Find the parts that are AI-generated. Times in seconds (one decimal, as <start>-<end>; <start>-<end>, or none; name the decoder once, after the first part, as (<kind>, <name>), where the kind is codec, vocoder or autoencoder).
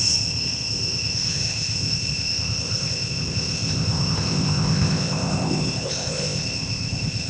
0.0-7.3 (codec, ZipCodec)